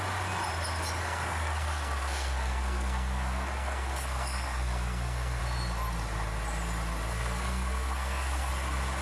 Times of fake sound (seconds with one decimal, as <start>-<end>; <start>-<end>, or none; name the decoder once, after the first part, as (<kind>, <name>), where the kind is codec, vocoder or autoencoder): 1.0-5.4 (codec, SNAC); 7.1-8.5